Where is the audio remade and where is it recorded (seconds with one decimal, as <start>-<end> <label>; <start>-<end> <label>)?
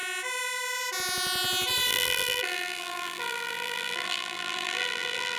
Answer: 0.0-1.9 recorded; 1.9-5.4 remade